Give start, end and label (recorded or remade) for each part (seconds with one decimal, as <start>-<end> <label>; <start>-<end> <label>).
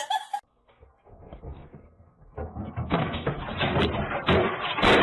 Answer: 0.0-0.5 recorded; 0.5-3.3 remade; 3.3-5.0 recorded